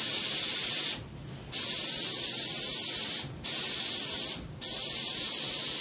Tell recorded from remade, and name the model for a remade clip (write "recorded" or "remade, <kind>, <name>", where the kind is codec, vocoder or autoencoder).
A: remade, vocoder, BigVGAN v2